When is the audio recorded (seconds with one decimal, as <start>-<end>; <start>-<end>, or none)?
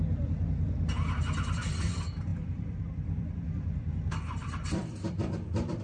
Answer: 0.0-2.3